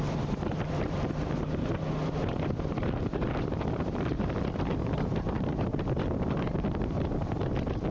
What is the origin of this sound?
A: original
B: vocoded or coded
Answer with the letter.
B